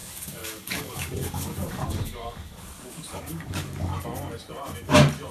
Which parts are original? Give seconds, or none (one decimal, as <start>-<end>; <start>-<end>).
3.9-5.3